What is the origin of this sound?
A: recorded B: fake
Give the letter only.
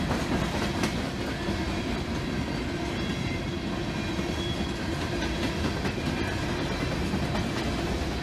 A